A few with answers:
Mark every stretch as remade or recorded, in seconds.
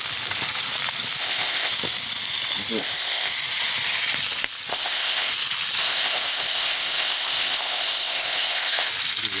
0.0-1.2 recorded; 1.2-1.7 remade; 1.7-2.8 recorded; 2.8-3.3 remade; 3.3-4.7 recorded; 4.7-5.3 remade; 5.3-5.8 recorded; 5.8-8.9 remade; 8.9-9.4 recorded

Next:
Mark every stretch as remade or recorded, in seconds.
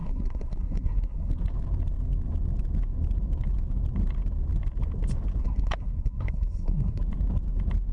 0.0-1.3 remade; 1.3-5.4 recorded; 5.4-7.0 remade; 7.0-7.9 recorded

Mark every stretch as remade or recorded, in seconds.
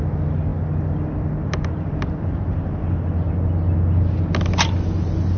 0.0-5.4 recorded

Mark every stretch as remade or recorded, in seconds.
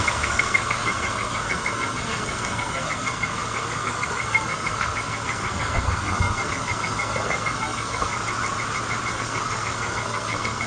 0.0-8.1 remade; 8.1-9.1 recorded; 9.1-10.7 remade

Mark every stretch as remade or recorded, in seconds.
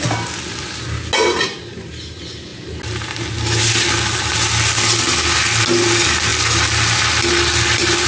0.0-8.1 recorded